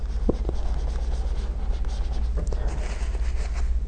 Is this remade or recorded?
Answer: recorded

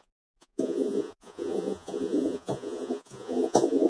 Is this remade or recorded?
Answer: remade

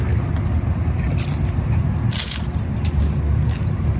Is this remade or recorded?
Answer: recorded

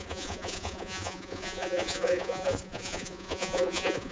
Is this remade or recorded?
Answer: remade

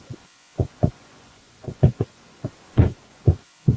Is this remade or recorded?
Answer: remade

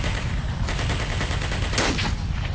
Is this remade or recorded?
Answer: recorded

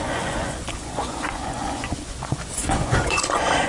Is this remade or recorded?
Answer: remade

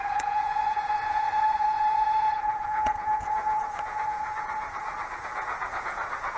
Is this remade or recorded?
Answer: remade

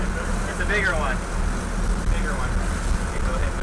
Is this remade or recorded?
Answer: recorded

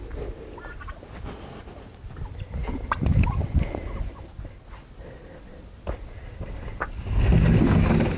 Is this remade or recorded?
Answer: recorded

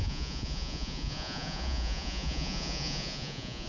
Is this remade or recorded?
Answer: remade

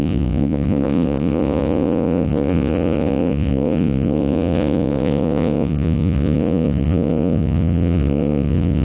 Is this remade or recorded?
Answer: remade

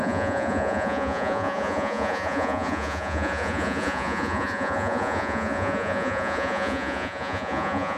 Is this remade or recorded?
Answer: remade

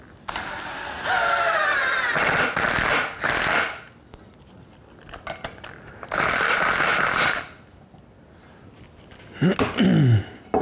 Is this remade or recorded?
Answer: recorded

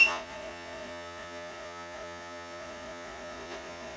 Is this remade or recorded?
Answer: remade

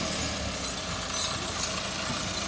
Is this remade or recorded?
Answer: recorded